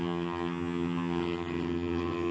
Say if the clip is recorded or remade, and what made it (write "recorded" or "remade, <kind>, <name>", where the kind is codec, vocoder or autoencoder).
remade, vocoder, HiFi-GAN